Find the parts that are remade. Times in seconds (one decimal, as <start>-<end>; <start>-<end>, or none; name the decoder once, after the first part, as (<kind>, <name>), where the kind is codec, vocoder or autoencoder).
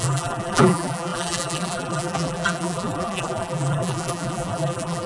0.0-5.1 (vocoder, BigVGAN v2)